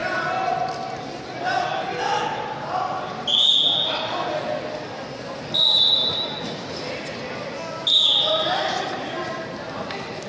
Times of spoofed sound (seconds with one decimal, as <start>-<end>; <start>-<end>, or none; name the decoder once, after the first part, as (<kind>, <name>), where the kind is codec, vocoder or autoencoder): none